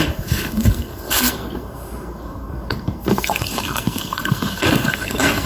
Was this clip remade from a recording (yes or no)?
yes